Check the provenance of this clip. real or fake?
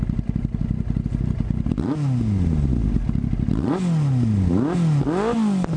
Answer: real